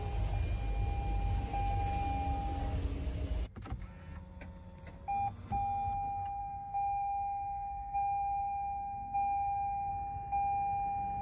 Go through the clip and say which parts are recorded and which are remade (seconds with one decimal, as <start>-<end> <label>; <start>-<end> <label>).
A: 0.0-6.4 recorded; 6.4-9.9 remade; 9.9-11.2 recorded